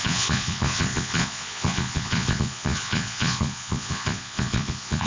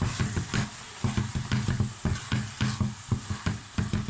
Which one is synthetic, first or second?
first